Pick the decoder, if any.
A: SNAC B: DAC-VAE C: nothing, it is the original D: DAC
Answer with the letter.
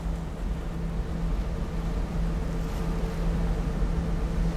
C